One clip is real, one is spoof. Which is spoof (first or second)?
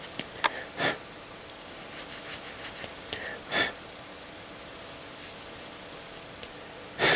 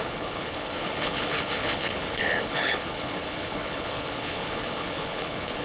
second